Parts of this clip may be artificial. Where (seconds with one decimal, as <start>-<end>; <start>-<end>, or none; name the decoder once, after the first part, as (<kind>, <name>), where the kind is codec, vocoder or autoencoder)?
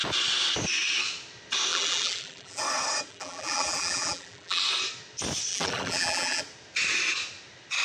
1.7-2.6 (vocoder, BigVGAN v2); 3.1-4.6; 5.5-6.4